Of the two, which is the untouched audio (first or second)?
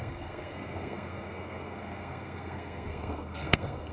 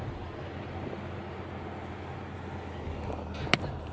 second